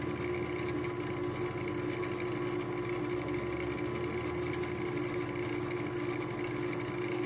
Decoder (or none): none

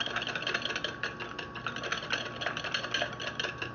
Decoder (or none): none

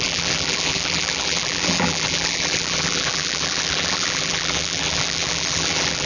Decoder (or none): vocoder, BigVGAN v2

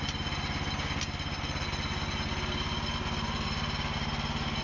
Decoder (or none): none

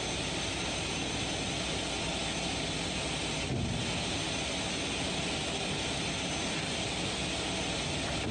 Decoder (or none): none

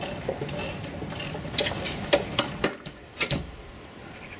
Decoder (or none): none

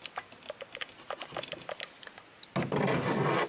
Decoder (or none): none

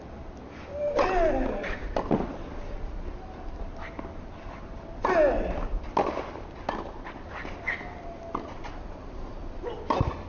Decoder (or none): none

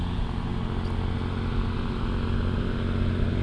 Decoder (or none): none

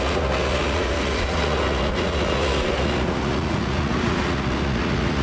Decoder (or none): vocoder, Vocos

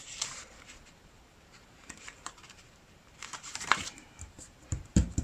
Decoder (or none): vocoder, BigVGAN v2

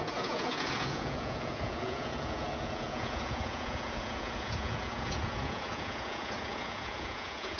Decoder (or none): vocoder, Vocos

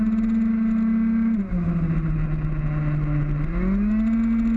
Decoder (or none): none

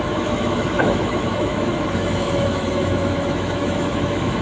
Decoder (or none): autoencoder, DAC-VAE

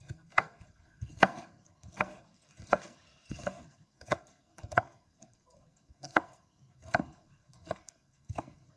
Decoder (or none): codec, SNAC